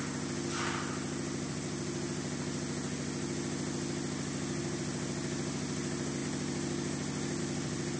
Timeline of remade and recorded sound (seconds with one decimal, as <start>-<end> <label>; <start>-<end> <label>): 0.0-8.0 recorded